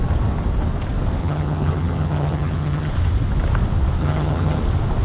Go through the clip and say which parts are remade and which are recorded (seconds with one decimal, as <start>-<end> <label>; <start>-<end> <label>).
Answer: 0.0-1.2 recorded; 1.2-2.9 remade; 2.9-4.0 recorded; 4.0-4.6 remade; 4.6-5.0 recorded